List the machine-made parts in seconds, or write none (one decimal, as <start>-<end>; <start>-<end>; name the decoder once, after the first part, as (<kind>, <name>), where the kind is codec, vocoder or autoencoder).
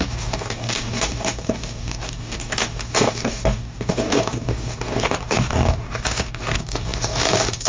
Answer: 0.0-7.7 (codec, DAC)